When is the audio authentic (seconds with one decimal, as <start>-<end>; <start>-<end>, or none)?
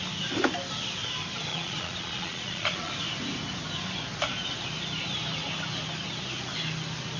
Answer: 0.0-1.5; 2.9-7.2